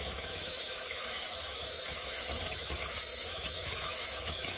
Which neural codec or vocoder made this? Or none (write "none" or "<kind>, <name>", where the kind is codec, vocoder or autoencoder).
autoencoder, DAC-VAE